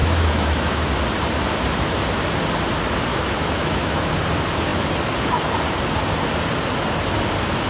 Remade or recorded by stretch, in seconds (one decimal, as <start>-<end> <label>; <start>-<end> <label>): 0.0-0.9 remade; 0.9-3.1 recorded; 3.1-4.1 remade; 4.1-7.7 recorded